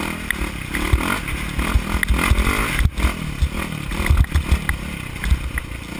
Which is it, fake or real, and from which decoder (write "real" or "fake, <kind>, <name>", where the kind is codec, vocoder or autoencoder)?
real